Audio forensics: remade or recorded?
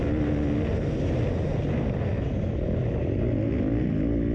recorded